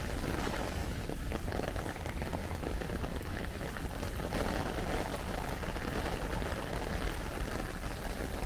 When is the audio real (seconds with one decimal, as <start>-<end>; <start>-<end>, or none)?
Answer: 0.0-0.8; 1.8-2.4; 3.7-8.5